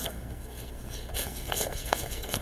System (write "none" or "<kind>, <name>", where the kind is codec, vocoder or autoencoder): codec, SNAC